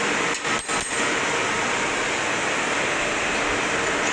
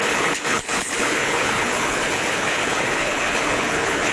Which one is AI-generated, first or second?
second